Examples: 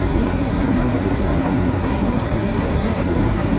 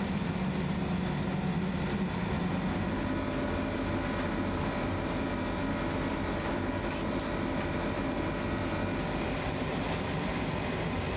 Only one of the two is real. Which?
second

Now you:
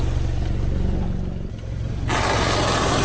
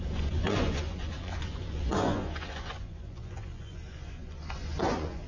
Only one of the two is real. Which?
first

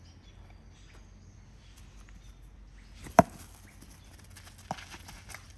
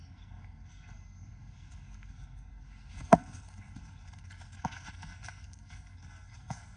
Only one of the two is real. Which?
first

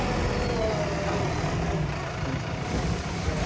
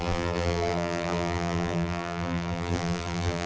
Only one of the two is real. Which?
first